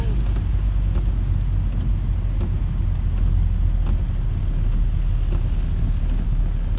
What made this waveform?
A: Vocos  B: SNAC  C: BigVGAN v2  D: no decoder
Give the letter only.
D